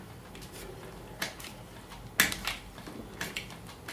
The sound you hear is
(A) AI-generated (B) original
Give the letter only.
B